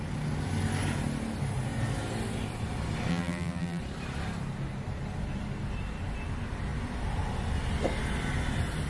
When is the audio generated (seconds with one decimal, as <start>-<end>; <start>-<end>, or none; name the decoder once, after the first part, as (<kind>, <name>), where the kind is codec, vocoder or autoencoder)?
3.1-3.8 (vocoder, BigVGAN v2)